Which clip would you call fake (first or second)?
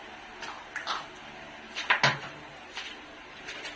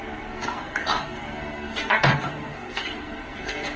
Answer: second